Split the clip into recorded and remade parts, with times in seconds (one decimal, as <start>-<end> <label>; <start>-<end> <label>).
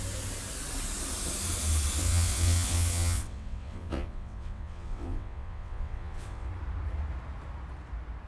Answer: 0.0-2.0 recorded; 2.0-6.5 remade; 6.5-8.3 recorded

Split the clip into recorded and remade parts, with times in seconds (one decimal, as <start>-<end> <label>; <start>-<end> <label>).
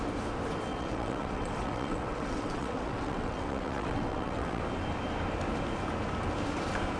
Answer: 0.0-0.7 recorded; 0.7-4.6 remade; 4.6-7.0 recorded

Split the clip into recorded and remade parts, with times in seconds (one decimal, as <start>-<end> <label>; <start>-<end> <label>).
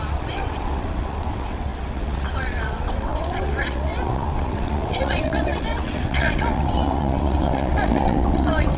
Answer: 0.0-8.8 remade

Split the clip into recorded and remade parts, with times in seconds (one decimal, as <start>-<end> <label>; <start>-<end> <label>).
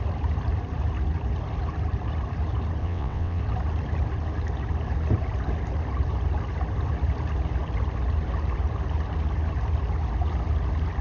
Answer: 0.0-2.8 recorded; 2.8-3.4 remade; 3.4-11.0 recorded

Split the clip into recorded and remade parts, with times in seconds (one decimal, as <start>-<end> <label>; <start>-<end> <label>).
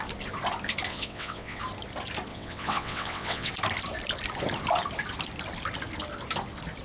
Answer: 0.0-0.9 recorded; 0.9-1.6 remade; 1.6-2.3 recorded; 2.3-3.5 remade; 3.5-6.8 recorded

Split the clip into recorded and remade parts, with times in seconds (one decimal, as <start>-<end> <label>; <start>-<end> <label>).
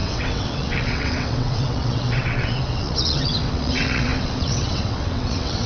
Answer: 0.0-5.7 remade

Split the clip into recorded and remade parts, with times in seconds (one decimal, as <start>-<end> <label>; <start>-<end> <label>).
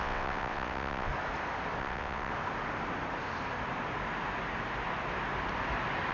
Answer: 0.0-1.1 remade; 1.1-1.8 recorded; 1.8-2.3 remade; 2.3-6.1 recorded